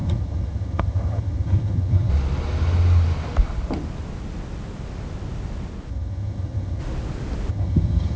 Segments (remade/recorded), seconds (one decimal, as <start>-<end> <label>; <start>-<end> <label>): 0.0-2.1 remade; 2.1-5.9 recorded; 5.9-6.8 remade; 6.8-7.5 recorded; 7.5-8.2 remade